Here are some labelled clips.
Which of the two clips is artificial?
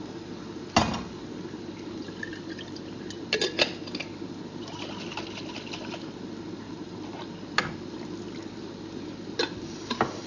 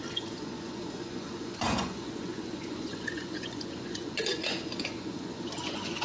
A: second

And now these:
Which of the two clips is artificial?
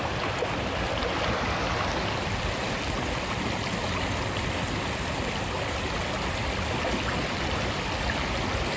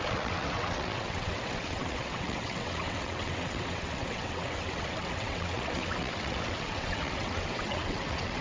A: second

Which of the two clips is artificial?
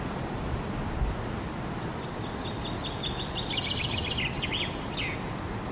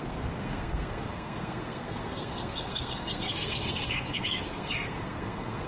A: second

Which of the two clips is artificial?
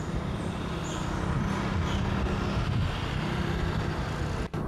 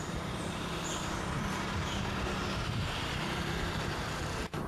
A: second